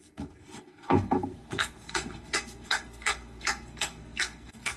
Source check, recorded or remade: remade